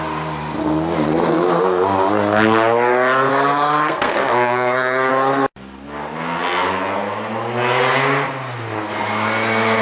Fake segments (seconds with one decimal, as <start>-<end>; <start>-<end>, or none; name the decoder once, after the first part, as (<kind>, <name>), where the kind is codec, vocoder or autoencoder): 1.1-1.6 (codec, SNAC); 3.3-5.1